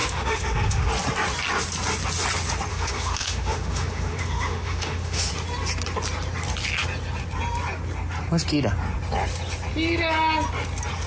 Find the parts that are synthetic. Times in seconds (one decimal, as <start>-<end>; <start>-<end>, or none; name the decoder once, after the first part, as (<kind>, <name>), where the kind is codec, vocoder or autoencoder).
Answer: 0.0-0.9 (autoencoder, DAC-VAE); 2.7-5.3